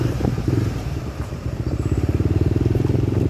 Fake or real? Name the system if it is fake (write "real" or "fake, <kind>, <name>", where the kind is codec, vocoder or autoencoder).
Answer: fake, vocoder, BigVGAN v2